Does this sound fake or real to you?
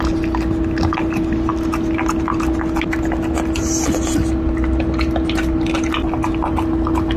real